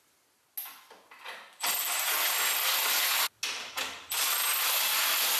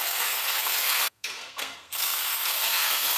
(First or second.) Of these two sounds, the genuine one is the first